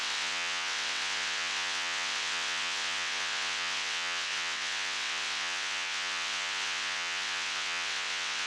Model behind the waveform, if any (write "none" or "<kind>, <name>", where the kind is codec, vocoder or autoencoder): vocoder, WaveNeXt